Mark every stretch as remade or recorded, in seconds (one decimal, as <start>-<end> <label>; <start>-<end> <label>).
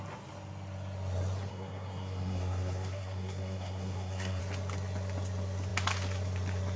0.0-1.5 recorded; 1.5-4.4 remade; 4.4-6.8 recorded